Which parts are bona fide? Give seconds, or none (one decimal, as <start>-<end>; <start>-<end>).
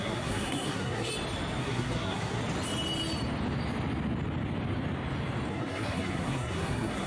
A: 1.1-1.6; 2.4-5.5